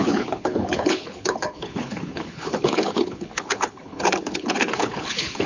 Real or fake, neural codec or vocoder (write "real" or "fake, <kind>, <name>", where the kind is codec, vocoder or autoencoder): fake, codec, HILCodec